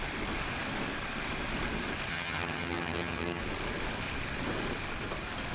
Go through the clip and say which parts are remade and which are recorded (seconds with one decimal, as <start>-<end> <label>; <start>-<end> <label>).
0.0-2.1 recorded; 2.1-3.4 remade; 3.4-5.5 recorded